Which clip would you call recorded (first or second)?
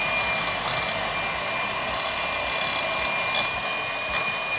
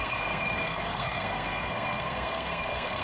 first